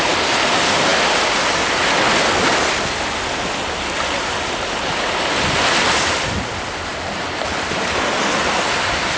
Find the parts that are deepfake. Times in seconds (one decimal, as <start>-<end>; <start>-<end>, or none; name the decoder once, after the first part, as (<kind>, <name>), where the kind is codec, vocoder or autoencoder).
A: none